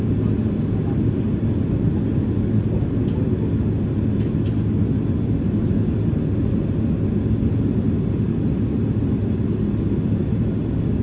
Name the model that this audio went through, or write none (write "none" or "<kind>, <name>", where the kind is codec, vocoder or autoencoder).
none